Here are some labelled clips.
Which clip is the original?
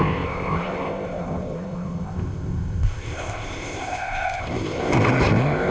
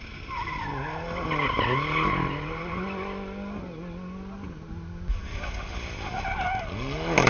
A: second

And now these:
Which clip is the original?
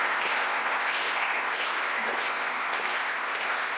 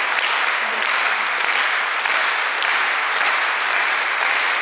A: second